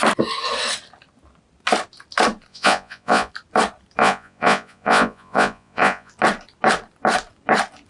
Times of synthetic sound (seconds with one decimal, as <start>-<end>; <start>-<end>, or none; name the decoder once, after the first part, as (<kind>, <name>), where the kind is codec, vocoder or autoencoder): 2.5-3.3 (vocoder, Vocos); 4.0-6.1